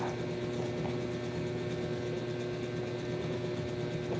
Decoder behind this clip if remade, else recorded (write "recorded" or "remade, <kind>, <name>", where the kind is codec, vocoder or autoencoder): recorded